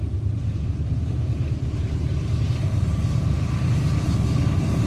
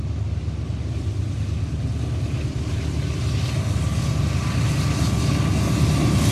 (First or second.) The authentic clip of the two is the second